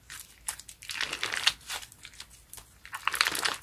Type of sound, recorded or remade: recorded